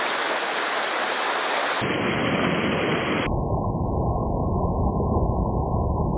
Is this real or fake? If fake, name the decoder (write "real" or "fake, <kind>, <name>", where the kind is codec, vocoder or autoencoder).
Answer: real